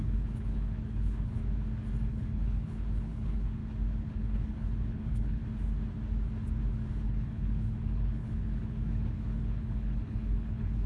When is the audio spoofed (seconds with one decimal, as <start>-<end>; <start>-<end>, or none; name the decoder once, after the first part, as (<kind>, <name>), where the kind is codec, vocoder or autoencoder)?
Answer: 0.0-1.4 (codec, HILCodec); 2.1-3.6; 4.1-5.4; 6.9-10.9